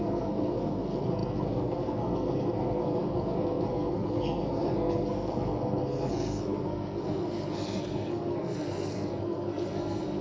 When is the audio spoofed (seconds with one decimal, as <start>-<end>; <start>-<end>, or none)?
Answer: 0.0-10.2